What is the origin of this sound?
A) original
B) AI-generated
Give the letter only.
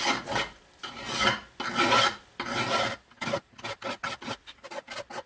A